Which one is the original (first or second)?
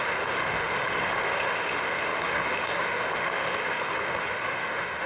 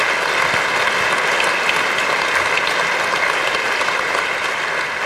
second